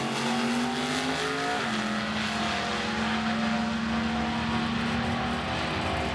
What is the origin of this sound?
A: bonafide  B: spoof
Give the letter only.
A